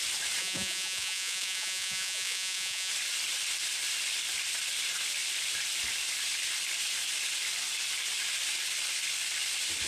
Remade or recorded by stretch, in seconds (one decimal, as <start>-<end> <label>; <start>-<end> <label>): 0.0-0.4 recorded; 0.4-2.9 remade; 2.9-9.9 recorded